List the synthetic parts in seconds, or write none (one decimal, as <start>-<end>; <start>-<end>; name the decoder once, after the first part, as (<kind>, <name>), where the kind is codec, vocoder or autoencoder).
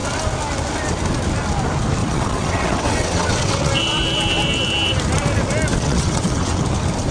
2.0-3.7 (vocoder, WaveNeXt); 5.7-6.6